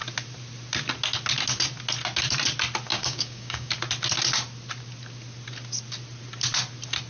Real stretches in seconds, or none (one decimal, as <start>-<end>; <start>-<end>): 0.0-2.9; 3.7-7.1